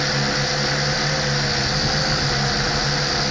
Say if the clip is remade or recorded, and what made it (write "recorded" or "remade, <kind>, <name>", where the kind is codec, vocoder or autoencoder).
recorded